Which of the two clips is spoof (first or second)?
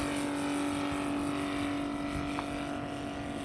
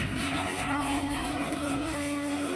second